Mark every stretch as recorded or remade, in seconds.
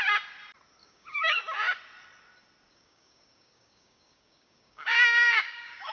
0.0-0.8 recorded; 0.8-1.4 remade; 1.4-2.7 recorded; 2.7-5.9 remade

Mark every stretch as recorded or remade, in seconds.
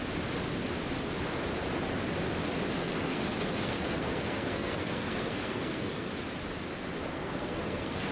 0.0-2.8 recorded; 2.8-6.1 remade; 6.1-7.1 recorded; 7.1-8.1 remade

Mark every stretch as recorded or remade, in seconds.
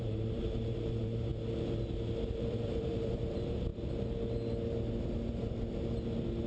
0.0-1.3 remade; 1.3-2.3 recorded; 2.3-3.7 remade; 3.7-6.5 recorded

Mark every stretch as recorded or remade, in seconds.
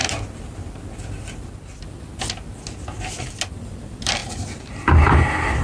0.0-3.4 recorded; 3.4-4.2 remade; 4.2-4.7 recorded; 4.7-5.6 remade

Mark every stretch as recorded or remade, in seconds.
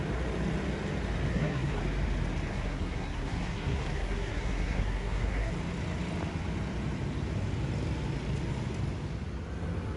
0.0-1.3 recorded; 1.3-1.8 remade; 1.8-2.5 recorded; 2.5-5.5 remade; 5.5-10.0 recorded